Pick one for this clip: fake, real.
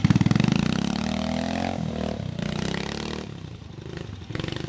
real